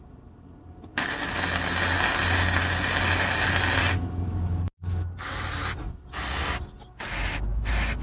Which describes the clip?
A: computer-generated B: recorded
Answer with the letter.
B